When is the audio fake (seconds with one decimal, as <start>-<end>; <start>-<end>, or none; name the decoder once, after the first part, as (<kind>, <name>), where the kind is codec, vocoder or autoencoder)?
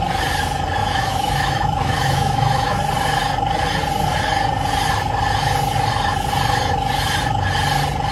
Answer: 0.8-2.8 (autoencoder, DAC-VAE)